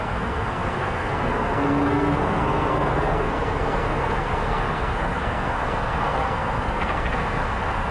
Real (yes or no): no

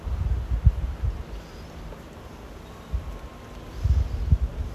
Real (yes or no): yes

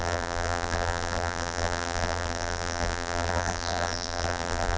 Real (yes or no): no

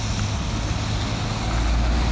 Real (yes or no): yes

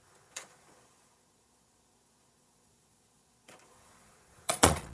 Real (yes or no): no